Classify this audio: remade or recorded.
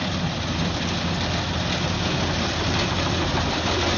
recorded